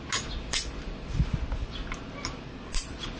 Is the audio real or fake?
real